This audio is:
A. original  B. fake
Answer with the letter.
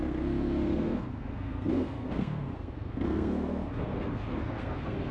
B